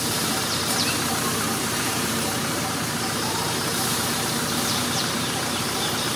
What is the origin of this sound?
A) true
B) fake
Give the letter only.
B